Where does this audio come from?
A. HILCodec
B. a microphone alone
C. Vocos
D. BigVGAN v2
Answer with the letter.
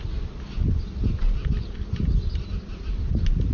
B